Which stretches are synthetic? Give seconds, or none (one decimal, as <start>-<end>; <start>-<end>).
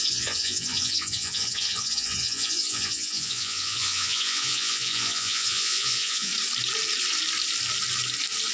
0.0-6.3